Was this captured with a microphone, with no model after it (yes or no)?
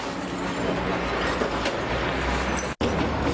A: yes